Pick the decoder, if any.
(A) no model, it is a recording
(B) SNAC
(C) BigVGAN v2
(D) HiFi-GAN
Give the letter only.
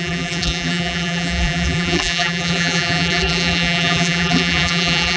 C